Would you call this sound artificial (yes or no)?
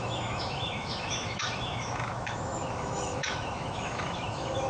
yes